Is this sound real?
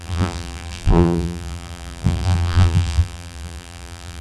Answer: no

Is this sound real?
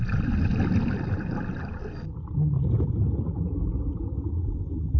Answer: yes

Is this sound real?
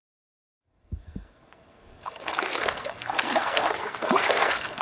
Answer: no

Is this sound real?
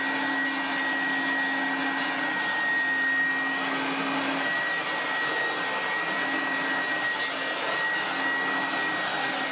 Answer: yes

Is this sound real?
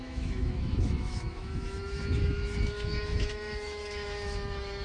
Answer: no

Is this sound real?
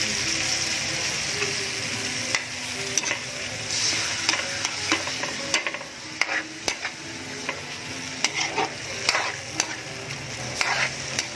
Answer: yes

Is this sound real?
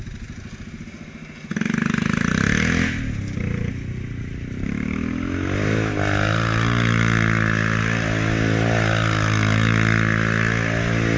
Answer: yes